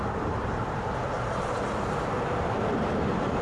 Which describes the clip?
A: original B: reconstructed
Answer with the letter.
B